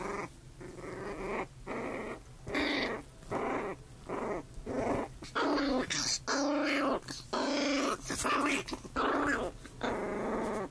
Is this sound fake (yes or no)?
no